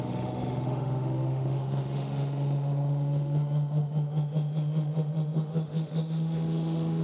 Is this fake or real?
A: fake